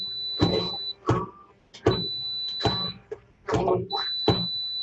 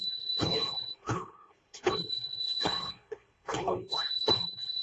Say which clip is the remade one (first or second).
second